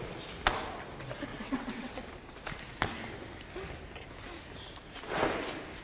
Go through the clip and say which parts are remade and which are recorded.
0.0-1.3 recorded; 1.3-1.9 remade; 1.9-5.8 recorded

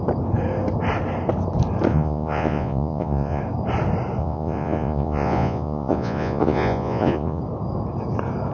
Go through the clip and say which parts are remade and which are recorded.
0.0-1.9 recorded; 1.9-3.4 remade; 3.4-4.2 recorded; 4.2-7.4 remade; 7.4-8.5 recorded